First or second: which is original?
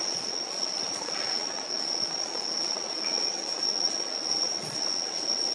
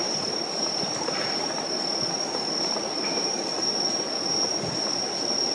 second